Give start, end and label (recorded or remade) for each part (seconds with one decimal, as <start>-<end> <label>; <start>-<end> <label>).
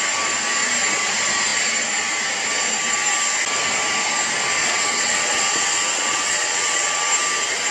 0.0-4.6 recorded; 4.6-7.1 remade; 7.1-7.7 recorded